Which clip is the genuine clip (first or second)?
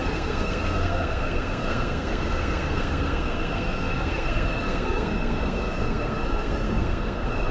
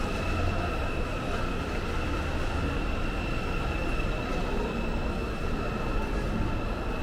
second